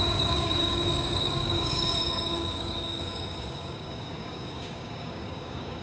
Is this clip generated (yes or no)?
yes